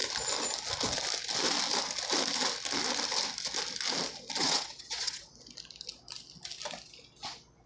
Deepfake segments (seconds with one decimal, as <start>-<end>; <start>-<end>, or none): 4.4-5.3